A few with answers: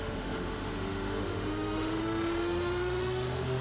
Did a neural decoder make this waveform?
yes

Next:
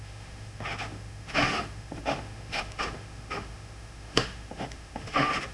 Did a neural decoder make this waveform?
yes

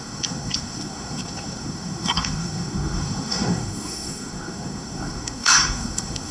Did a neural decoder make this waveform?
yes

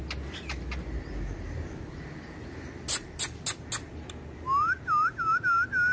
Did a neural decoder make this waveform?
no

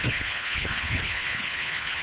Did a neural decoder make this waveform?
yes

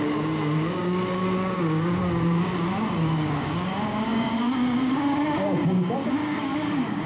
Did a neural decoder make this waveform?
yes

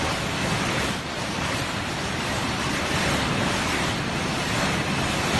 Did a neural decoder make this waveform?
no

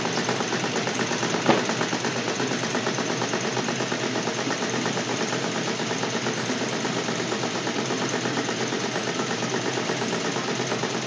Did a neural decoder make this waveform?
no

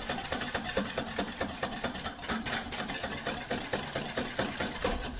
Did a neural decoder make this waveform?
no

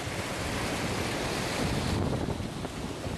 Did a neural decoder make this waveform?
no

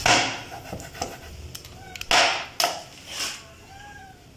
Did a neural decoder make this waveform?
no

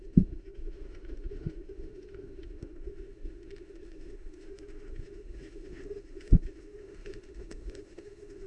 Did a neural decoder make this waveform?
yes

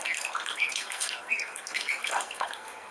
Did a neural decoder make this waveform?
yes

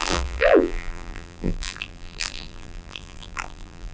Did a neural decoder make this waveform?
yes